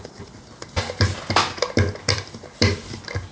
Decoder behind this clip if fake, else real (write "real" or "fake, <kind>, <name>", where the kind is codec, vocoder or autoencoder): real